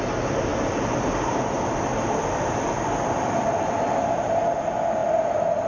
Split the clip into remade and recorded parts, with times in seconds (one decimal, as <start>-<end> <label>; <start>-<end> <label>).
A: 0.0-5.7 recorded